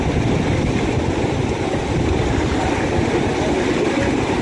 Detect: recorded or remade recorded